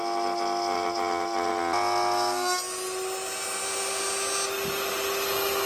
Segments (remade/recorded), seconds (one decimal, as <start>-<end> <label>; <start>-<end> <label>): 0.0-5.7 recorded